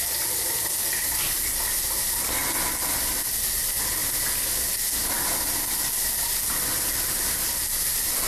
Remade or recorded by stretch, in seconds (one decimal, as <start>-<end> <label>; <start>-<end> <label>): 0.0-8.3 recorded